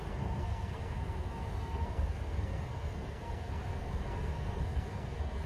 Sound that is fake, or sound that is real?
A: fake